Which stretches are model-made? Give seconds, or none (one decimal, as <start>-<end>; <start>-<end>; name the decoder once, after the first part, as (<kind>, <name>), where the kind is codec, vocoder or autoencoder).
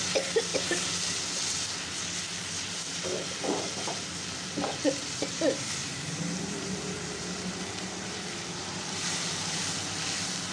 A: 0.5-1.4 (vocoder, BigVGAN v2); 2.4-3.0; 5.0-9.6